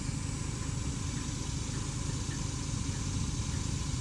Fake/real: real